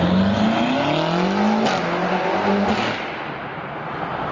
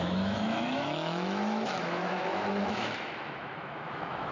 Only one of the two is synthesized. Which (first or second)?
second